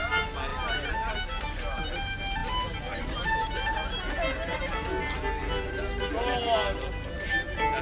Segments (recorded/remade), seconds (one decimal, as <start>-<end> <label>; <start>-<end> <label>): 0.0-7.8 recorded